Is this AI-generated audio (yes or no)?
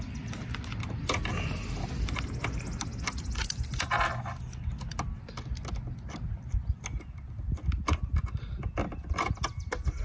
no